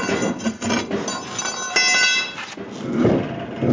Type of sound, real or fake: real